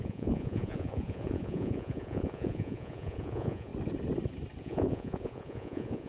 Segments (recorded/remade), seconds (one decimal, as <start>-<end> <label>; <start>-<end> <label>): 0.0-3.7 remade; 3.7-4.6 recorded; 4.6-6.1 remade